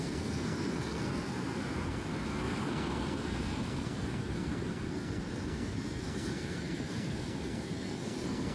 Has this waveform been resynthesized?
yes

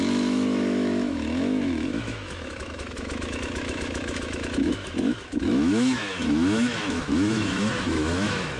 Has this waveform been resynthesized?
yes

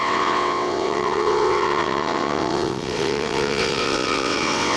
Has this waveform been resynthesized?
yes